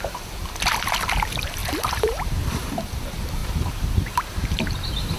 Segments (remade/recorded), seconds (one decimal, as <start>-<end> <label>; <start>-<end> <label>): 0.0-0.4 remade; 0.4-1.1 recorded; 1.1-5.2 remade